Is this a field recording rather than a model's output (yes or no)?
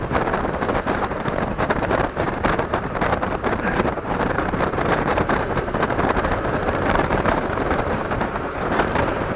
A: no